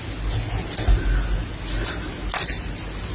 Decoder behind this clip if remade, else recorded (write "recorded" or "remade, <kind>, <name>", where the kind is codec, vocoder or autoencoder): recorded